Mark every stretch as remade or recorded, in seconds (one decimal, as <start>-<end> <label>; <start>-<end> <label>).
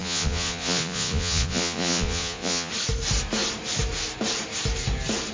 0.0-2.7 remade; 2.7-5.3 recorded